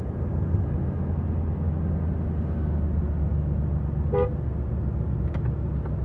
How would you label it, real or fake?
real